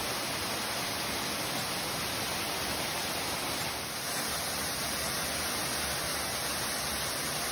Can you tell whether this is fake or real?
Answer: real